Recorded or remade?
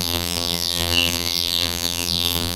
remade